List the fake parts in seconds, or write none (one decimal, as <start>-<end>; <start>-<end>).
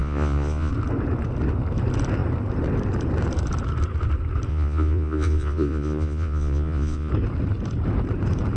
0.0-0.7; 4.5-7.1